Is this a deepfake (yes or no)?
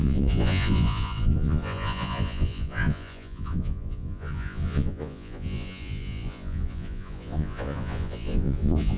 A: yes